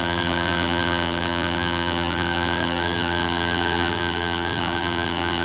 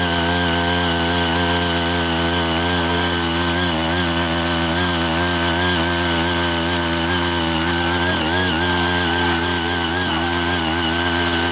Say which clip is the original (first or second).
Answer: second